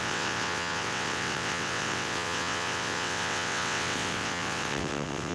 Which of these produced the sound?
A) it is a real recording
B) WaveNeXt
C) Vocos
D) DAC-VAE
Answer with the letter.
B